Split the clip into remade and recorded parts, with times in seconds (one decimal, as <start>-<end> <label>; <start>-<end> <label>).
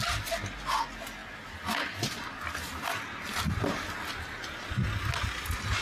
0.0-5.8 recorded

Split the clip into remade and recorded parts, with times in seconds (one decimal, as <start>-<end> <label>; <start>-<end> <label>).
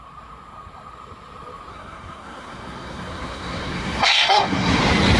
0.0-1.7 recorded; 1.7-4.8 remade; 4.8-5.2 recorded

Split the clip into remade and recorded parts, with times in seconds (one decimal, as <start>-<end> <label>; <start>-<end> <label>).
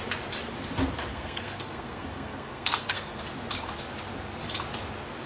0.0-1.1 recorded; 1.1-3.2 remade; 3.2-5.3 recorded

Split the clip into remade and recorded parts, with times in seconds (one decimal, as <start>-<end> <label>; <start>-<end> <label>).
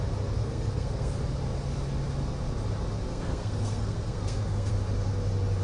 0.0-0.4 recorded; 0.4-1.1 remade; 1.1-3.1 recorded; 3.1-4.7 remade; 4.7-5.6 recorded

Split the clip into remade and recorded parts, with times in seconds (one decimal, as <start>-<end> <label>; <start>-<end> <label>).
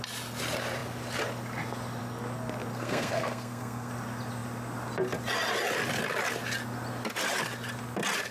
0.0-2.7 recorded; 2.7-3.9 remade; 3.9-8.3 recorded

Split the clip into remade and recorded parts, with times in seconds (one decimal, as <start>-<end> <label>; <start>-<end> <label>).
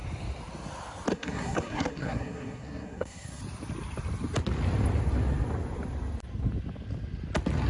0.0-1.1 recorded; 1.1-3.4 remade; 3.4-7.7 recorded